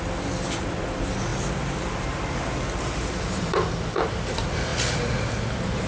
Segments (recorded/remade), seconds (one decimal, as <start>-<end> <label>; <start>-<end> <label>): 0.0-5.9 recorded